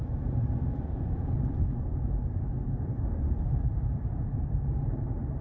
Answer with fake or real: fake